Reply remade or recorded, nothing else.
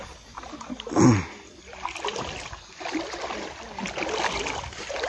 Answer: recorded